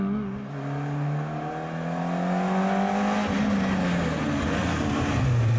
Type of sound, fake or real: real